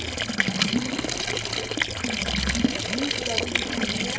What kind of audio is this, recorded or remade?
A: recorded